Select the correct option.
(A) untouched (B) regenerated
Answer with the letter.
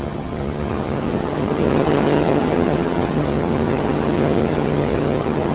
B